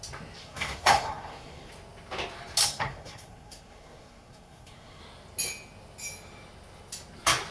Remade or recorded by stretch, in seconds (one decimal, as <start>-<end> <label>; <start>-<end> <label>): 0.0-0.4 recorded; 0.4-1.7 remade; 1.7-2.6 recorded; 2.6-5.0 remade; 5.0-7.5 recorded